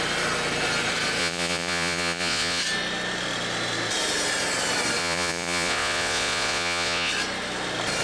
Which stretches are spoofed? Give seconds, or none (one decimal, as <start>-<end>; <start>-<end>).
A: 1.2-2.6; 5.0-7.1